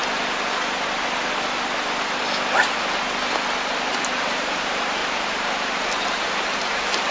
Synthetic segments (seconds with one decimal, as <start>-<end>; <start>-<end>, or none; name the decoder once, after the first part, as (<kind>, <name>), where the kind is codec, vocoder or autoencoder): 3.9-7.1 (vocoder, BigVGAN v2)